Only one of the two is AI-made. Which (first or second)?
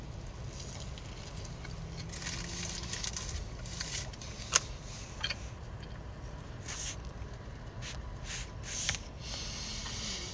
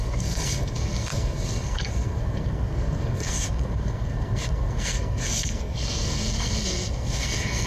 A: second